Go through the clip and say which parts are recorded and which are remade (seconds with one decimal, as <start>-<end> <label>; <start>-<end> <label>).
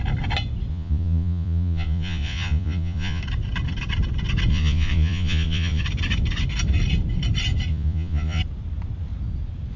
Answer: 0.0-0.7 recorded; 0.7-3.2 remade; 3.2-4.5 recorded; 4.5-5.8 remade; 5.8-7.7 recorded; 7.7-8.4 remade; 8.4-9.8 recorded